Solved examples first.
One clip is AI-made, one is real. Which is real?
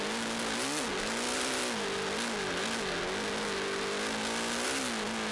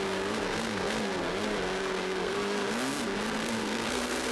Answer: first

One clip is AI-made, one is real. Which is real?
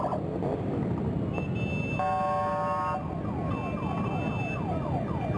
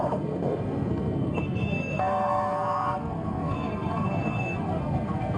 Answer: first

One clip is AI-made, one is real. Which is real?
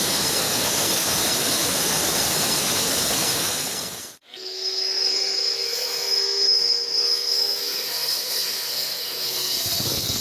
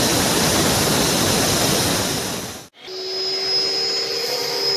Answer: second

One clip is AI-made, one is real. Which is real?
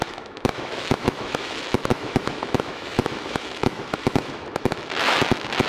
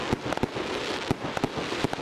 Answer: second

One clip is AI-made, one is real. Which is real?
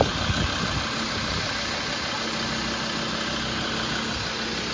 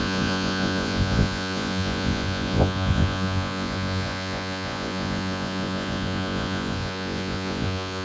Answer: first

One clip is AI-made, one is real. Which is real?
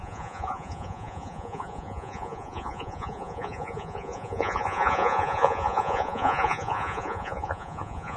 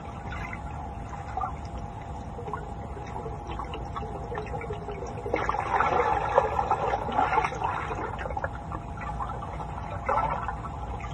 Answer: second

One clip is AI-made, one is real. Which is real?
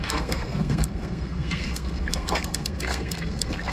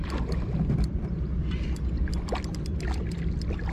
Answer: second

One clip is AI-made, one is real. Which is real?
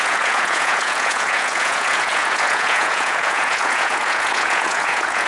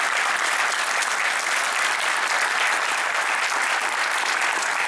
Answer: second